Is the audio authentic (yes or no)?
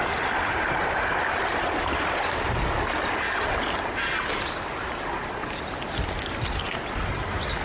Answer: yes